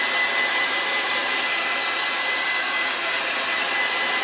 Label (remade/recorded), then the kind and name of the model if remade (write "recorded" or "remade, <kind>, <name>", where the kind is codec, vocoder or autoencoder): recorded